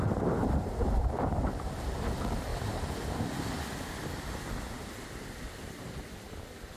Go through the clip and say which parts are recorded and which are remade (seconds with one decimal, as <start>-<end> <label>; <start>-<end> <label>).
0.0-2.5 remade; 2.5-6.8 recorded